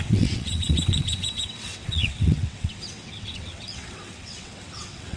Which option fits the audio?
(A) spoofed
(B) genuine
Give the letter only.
A